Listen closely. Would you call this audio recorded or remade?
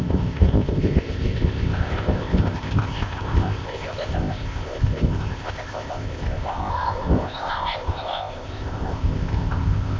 remade